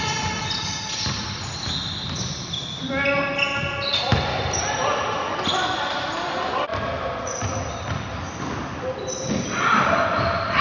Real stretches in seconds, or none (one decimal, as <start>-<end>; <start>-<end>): 0.0-10.6